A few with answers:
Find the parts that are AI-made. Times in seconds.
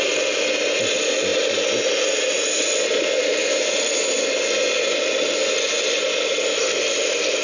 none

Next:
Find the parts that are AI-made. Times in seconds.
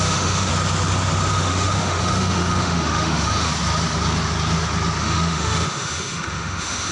0.0-0.5 (autoencoder, DAC-VAE); 1.3-3.5; 5.0-6.9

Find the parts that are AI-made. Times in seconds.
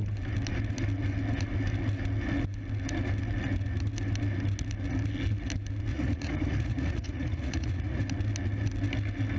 5.9-8.0 (vocoder, Vocos)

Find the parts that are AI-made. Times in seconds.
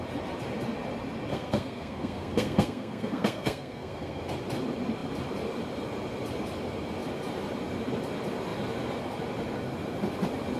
1.3-4.2 (codec, SNAC)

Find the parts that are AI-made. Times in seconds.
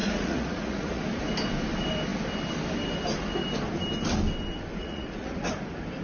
0.0-1.0 (vocoder, Vocos); 4.8-5.5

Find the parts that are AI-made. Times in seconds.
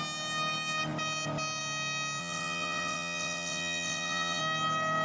2.2-4.4 (vocoder, WaveNeXt)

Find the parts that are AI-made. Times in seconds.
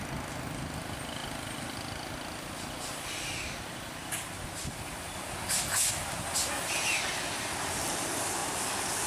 none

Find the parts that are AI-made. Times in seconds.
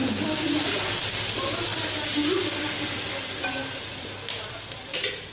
0.0-1.0 (vocoder, BigVGAN v2); 1.7-4.8